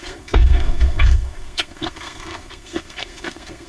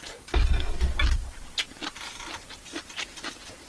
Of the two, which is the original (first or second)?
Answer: second